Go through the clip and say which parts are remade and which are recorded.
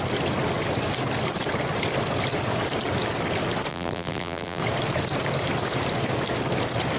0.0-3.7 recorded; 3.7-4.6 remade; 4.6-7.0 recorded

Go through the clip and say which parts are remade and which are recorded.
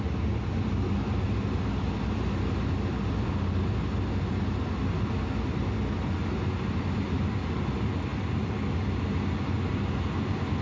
0.0-10.6 recorded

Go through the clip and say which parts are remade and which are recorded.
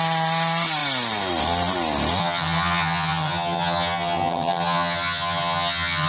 0.0-2.2 recorded; 2.2-6.1 remade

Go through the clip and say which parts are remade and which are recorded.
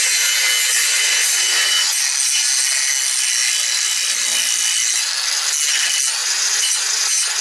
0.0-0.8 recorded; 0.8-2.0 remade; 2.0-6.2 recorded; 6.2-7.4 remade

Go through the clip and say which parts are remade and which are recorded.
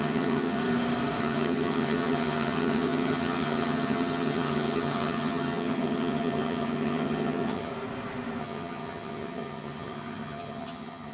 0.0-0.6 remade; 0.6-1.2 recorded; 1.2-7.7 remade; 7.7-8.4 recorded; 8.4-11.1 remade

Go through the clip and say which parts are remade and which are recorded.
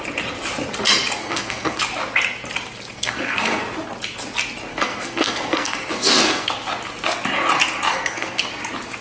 0.0-1.2 recorded; 1.2-1.8 remade; 1.8-2.9 recorded; 2.9-3.6 remade; 3.6-4.7 recorded; 4.7-6.5 remade; 6.5-7.9 recorded; 7.9-8.5 remade; 8.5-9.0 recorded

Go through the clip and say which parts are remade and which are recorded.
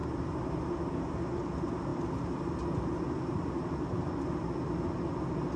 0.0-5.6 recorded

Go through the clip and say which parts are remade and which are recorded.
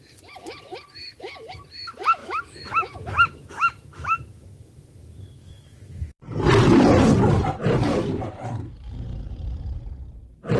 0.0-2.2 recorded; 2.2-6.2 remade; 6.2-10.6 recorded